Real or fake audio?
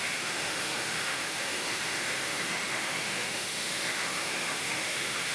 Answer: fake